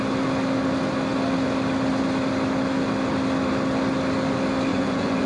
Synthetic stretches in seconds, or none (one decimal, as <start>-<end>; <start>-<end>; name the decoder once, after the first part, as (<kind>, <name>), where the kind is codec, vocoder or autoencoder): 4.7-5.3 (vocoder, Vocos)